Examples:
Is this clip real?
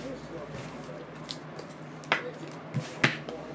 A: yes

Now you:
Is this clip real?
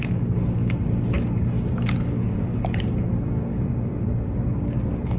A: no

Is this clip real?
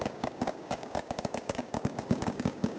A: no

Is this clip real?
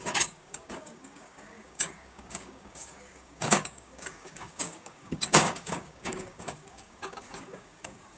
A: no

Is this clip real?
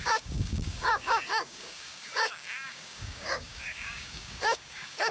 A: no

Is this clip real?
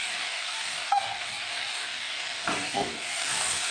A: no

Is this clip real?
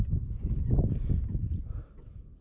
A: yes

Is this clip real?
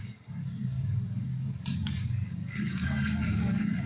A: no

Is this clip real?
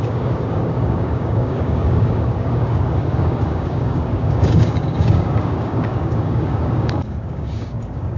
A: no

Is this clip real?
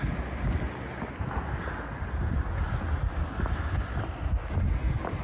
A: yes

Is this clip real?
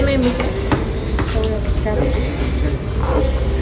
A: yes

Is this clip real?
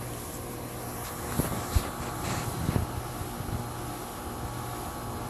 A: yes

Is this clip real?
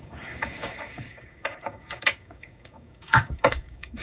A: no